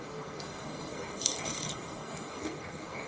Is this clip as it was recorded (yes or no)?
no